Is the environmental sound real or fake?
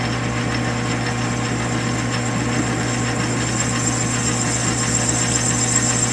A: real